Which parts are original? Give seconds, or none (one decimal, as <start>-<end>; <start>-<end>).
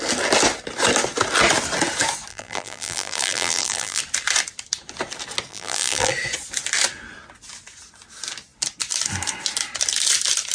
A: 0.0-2.3; 4.0-5.5; 6.1-10.5